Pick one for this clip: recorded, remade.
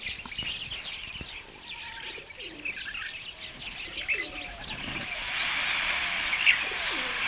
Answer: recorded